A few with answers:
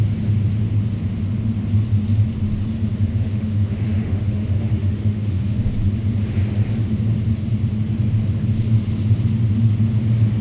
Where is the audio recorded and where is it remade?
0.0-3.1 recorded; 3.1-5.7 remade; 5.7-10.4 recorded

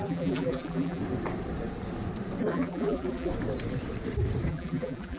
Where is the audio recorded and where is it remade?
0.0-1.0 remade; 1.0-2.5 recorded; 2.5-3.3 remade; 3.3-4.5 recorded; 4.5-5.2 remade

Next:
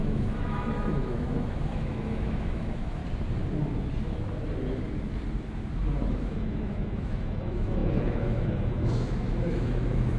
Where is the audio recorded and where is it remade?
0.0-3.0 remade; 3.0-6.1 recorded; 6.1-10.2 remade

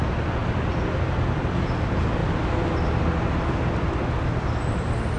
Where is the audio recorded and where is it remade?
0.0-5.2 recorded

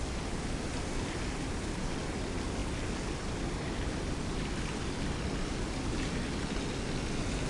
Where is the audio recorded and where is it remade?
0.0-2.6 recorded; 2.6-3.4 remade; 3.4-7.5 recorded